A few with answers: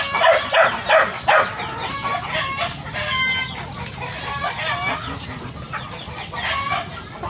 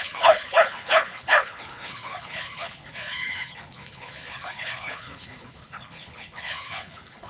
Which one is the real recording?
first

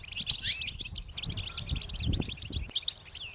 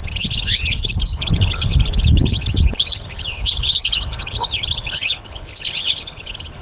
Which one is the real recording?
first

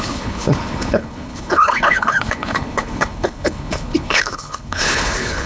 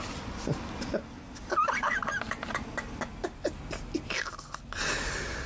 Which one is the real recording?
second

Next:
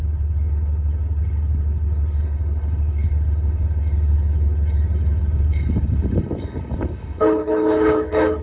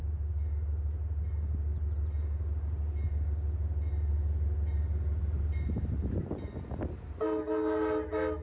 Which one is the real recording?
second